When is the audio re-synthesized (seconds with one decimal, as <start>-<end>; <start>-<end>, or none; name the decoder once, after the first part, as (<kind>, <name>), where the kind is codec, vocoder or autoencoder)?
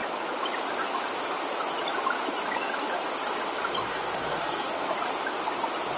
3.9-4.9 (codec, SNAC)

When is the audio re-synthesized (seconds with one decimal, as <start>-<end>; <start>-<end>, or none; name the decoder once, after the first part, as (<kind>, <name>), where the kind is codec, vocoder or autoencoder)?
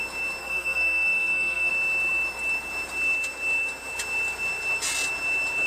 0.4-1.7 (codec, SNAC)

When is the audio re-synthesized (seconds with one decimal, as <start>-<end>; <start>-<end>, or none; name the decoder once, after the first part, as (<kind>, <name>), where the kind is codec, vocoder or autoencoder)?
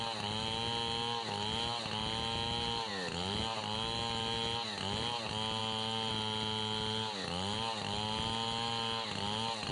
none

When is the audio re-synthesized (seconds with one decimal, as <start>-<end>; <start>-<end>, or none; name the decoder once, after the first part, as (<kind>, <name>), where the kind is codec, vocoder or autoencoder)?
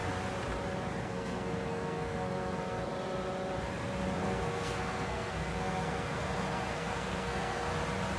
1.0-2.9 (codec, SNAC); 4.2-7.7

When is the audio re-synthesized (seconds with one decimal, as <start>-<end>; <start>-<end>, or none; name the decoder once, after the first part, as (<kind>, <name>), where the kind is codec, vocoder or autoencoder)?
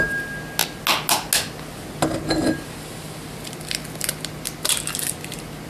none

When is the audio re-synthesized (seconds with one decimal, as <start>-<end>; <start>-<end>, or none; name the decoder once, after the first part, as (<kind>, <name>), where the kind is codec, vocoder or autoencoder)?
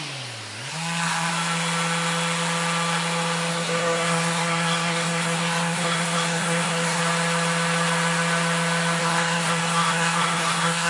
0.7-1.3 (codec, SNAC); 3.5-7.0; 9.0-10.9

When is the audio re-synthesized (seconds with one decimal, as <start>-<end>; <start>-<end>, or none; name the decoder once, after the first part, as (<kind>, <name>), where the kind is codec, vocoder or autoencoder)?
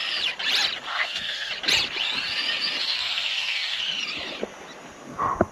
0.9-1.5 (codec, SNAC); 2.8-3.8